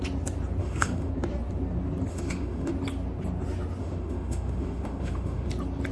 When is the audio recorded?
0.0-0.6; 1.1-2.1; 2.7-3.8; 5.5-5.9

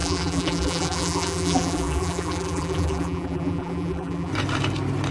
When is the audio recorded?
4.3-5.1

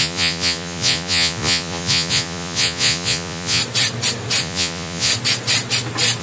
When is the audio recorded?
3.6-4.4; 5.1-6.2

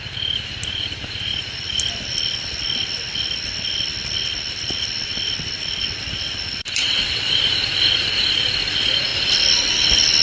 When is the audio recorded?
0.0-6.8; 7.4-10.2

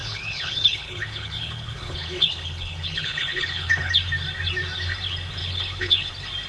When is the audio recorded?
3.9-5.4; 6.1-6.5

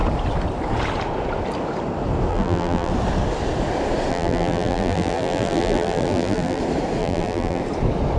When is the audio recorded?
0.0-2.3; 2.9-4.1; 6.6-7.0; 7.6-8.2

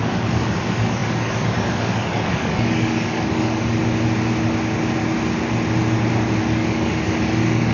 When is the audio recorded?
3.8-6.4

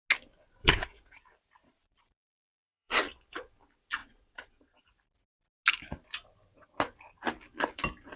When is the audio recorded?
0.0-0.6; 1.2-1.6; 3.0-4.0; 4.8-8.2